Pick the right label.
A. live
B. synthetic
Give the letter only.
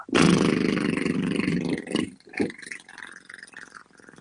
A